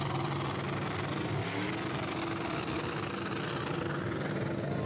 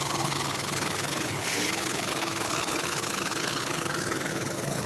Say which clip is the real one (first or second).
first